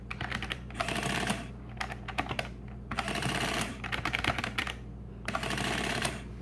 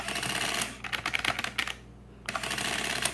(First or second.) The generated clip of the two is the first